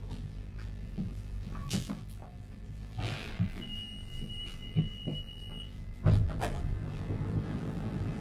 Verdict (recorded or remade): remade